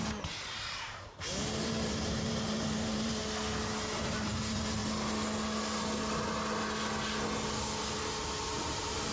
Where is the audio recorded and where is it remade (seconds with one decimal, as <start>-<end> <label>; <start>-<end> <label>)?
0.0-3.2 remade; 3.2-4.0 recorded; 4.0-4.8 remade; 4.8-8.3 recorded; 8.3-9.1 remade